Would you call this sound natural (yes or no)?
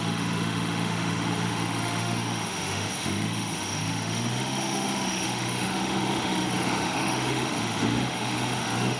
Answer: no